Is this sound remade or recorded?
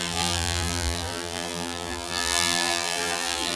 remade